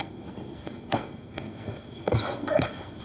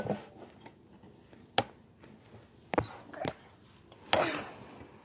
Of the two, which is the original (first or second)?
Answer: second